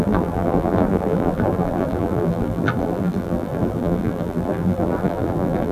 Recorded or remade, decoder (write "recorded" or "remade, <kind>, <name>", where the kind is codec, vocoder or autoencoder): remade, vocoder, BigVGAN v2